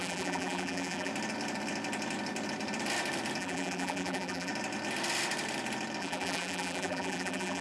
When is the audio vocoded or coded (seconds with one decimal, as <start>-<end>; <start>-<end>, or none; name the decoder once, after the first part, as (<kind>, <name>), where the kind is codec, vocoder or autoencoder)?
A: 0.0-1.1 (vocoder, BigVGAN v2); 3.4-4.5; 6.0-7.6